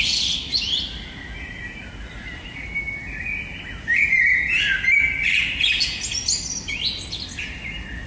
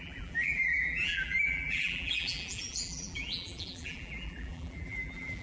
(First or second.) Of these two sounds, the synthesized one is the second